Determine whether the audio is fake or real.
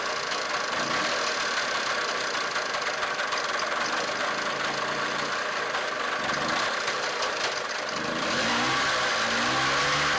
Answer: real